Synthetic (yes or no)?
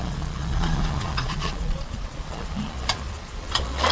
yes